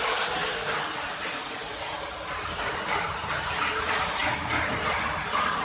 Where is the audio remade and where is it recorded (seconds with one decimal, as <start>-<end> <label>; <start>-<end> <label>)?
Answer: 0.0-5.6 recorded